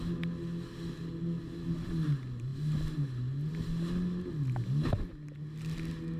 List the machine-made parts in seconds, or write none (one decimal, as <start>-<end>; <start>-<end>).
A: none